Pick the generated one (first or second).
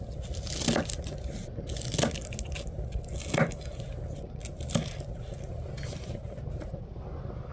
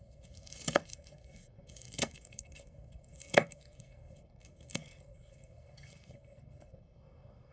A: second